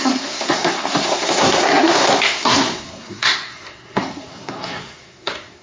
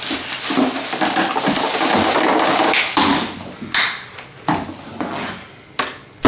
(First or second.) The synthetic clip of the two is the first